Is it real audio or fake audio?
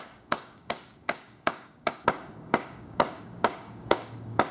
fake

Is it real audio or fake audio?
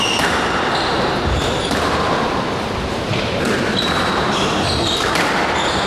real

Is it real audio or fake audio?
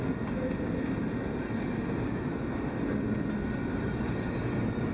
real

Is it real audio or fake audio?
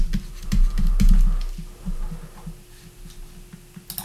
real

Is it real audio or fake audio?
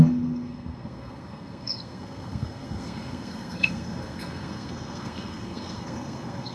fake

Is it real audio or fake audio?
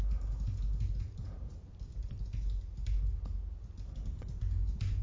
real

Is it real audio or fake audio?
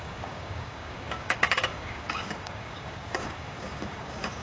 fake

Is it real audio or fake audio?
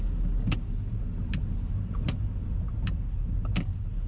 real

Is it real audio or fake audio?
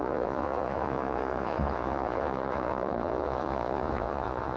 fake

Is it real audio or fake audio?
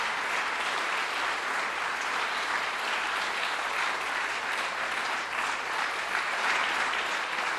fake